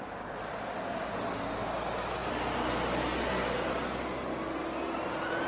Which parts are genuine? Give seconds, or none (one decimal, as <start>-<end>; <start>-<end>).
0.0-5.5